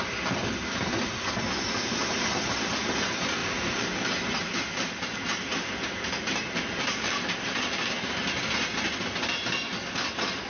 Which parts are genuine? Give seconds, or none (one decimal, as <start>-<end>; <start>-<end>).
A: 0.0-3.4; 8.1-10.5